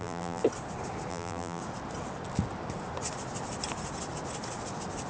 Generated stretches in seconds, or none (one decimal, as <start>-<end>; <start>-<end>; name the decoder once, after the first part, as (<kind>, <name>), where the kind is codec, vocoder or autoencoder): 0.0-0.4 (vocoder, BigVGAN v2); 1.1-1.6